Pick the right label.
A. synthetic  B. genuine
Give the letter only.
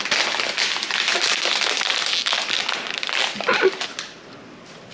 B